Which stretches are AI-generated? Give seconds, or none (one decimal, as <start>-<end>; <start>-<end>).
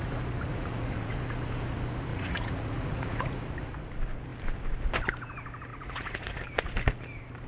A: 0.5-1.1; 2.1-3.4; 5.7-6.4